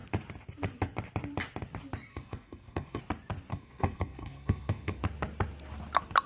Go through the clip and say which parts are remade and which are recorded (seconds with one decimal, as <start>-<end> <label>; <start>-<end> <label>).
0.0-2.1 recorded; 2.1-3.0 remade; 3.0-3.5 recorded; 3.5-5.0 remade; 5.0-6.3 recorded